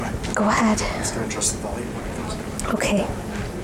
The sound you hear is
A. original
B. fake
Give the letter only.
A